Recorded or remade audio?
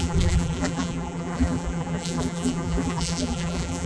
remade